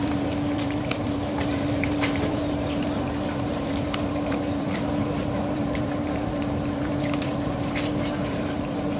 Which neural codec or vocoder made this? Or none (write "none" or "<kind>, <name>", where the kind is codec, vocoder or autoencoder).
vocoder, BigVGAN v2